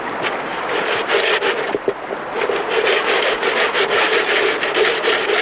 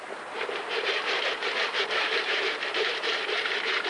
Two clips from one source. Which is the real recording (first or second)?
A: first